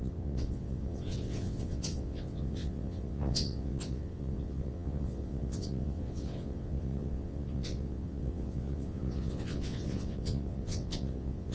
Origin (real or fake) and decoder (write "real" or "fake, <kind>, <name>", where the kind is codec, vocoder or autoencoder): fake, vocoder, WaveNeXt